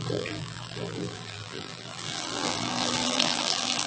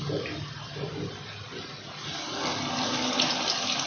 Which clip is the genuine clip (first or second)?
second